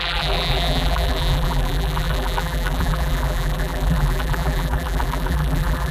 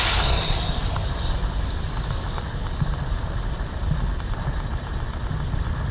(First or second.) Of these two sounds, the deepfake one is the first